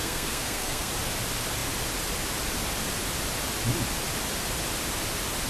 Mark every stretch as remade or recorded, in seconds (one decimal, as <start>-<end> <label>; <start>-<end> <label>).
0.0-0.9 remade; 0.9-5.5 recorded